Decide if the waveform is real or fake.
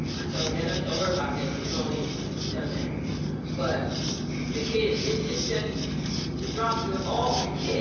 real